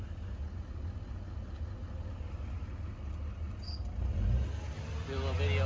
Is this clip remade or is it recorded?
recorded